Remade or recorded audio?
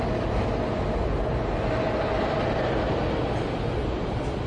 recorded